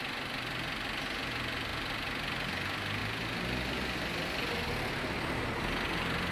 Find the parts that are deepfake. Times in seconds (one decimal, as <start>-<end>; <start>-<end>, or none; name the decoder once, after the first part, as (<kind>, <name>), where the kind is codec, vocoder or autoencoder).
none